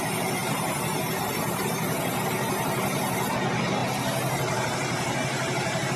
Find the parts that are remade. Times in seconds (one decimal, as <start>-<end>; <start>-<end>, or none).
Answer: 0.4-3.3; 3.8-6.0